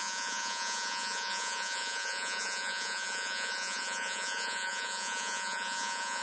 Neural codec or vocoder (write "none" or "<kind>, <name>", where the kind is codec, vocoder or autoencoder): vocoder, Vocos